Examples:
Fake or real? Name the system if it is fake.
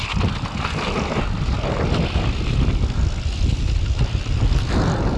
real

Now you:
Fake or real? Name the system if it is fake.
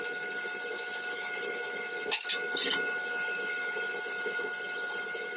real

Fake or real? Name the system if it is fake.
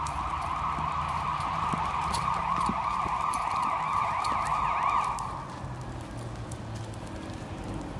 real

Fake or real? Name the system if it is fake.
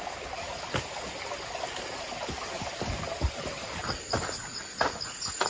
real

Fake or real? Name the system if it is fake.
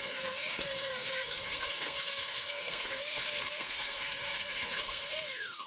fake, codec, SNAC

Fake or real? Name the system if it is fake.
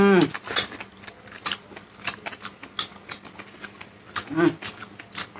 real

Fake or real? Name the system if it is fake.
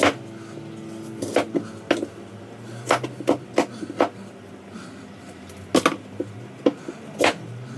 real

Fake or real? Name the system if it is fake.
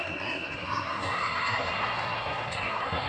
fake, codec, SNAC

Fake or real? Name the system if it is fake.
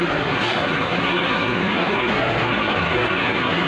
fake, codec, SNAC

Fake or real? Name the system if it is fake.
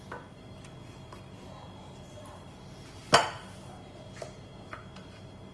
real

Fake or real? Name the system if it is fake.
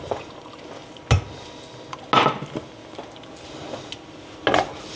real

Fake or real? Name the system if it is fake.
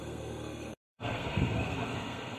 fake, codec, SNAC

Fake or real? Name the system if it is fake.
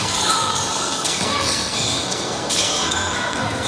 fake, codec, SNAC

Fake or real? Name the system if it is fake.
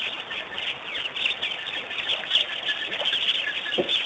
real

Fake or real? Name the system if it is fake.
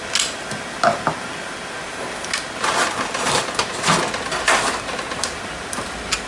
real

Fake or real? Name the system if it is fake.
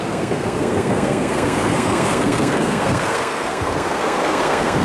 fake, codec, SNAC